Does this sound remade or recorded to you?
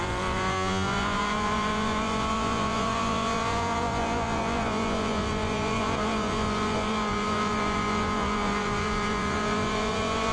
remade